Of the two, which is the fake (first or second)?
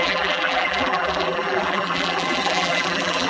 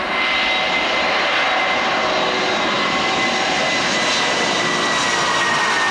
first